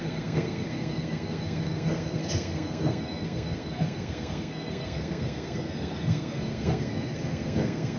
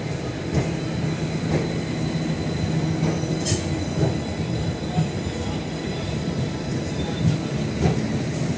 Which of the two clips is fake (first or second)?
first